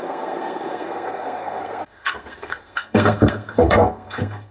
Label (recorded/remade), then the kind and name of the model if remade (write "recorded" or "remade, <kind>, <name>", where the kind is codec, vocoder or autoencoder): remade, codec, SNAC